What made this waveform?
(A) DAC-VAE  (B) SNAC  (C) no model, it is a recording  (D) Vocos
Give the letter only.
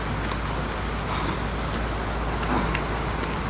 C